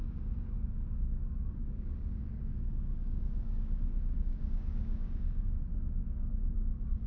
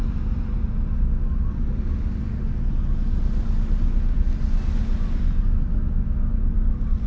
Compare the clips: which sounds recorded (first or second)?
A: second